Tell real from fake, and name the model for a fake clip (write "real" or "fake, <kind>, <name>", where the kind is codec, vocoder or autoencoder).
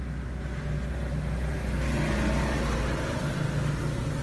real